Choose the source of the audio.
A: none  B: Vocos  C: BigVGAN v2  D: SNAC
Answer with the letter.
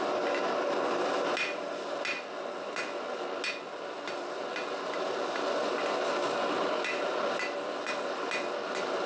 A